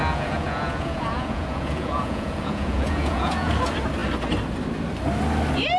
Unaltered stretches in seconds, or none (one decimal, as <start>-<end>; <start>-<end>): 3.5-5.8